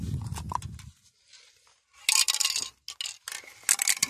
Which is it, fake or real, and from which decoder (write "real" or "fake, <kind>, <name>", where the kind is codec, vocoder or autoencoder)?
real